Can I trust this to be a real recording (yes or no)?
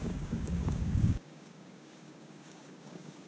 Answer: no